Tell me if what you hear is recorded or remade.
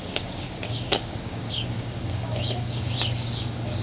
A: remade